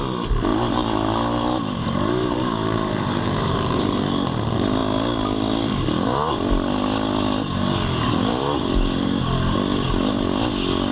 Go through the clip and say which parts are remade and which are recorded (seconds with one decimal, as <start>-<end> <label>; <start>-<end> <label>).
0.0-0.5 recorded; 0.5-4.0 remade; 4.0-10.9 recorded